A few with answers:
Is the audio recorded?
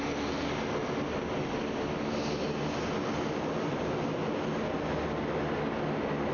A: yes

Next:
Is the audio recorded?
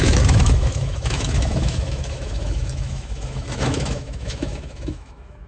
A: no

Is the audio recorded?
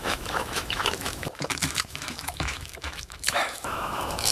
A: no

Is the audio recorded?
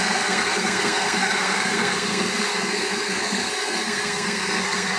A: no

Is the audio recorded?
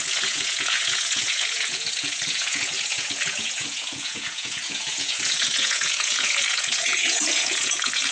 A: no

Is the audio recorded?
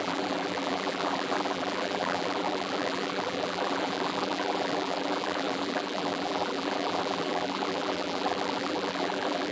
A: no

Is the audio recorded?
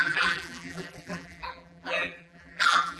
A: no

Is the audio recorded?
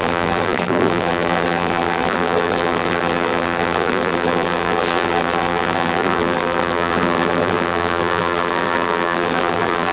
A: no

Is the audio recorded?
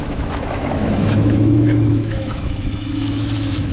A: no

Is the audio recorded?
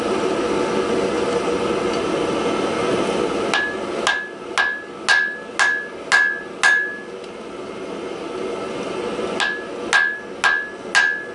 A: yes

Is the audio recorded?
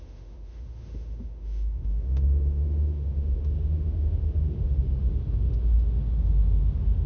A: no